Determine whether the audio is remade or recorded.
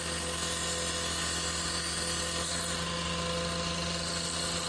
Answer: recorded